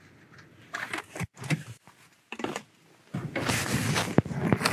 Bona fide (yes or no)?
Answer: yes